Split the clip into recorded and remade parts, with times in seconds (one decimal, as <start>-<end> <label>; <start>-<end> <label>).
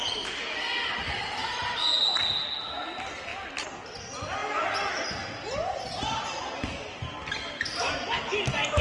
0.0-8.8 recorded